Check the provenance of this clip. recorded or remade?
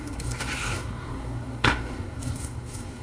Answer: remade